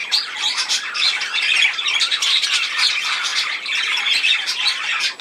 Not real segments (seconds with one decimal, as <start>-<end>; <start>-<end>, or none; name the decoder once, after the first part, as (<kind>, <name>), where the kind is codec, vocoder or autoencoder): 0.0-2.9 (vocoder, BigVGAN v2); 3.3-4.0